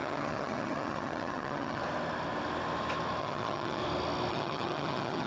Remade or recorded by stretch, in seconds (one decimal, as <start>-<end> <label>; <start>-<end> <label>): 0.0-1.8 remade; 1.8-3.2 recorded; 3.2-3.8 remade; 3.8-4.3 recorded; 4.3-5.3 remade